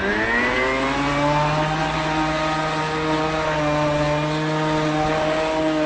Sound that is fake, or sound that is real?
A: real